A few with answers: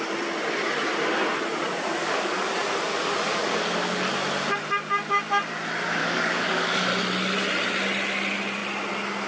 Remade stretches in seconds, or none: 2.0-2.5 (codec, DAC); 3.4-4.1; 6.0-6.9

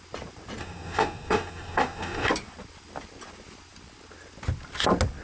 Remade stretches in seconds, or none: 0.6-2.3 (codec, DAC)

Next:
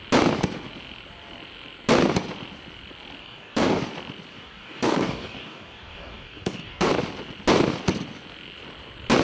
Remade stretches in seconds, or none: 3.2-3.8 (codec, DAC); 4.3-6.9

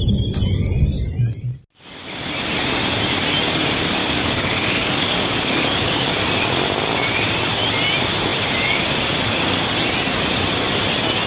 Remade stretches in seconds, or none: 4.0-6.1 (codec, DAC)

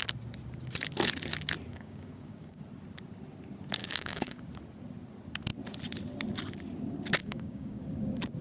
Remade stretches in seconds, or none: 1.7-2.6 (codec, DAC); 3.8-4.4; 7.2-7.8

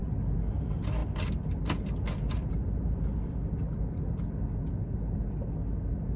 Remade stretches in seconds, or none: none

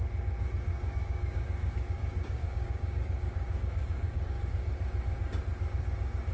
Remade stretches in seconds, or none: 0.7-4.5 (codec, DAC)

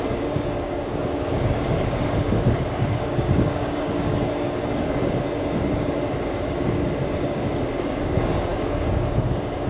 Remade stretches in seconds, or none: 0.0-9.7 (codec, DAC)